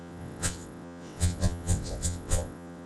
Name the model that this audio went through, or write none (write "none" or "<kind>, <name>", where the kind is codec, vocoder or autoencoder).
vocoder, WaveNeXt